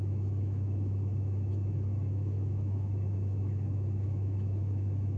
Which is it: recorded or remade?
remade